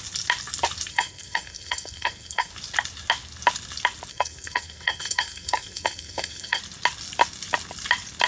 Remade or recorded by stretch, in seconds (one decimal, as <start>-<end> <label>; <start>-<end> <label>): 0.0-0.9 recorded; 0.9-2.5 remade; 2.5-4.1 recorded; 4.1-6.6 remade; 6.6-8.3 recorded